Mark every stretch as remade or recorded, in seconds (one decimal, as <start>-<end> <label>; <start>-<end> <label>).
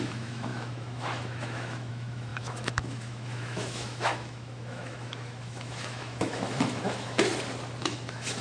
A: 0.0-7.3 remade; 7.3-7.8 recorded; 7.8-8.4 remade